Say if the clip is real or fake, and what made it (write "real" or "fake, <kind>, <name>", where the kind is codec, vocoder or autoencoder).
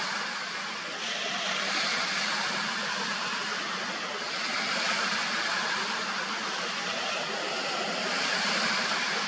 real